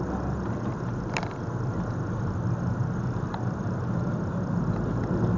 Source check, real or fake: real